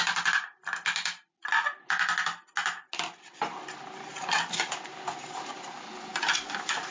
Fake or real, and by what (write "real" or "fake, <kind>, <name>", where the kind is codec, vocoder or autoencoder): real